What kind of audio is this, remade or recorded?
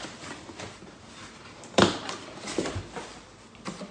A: remade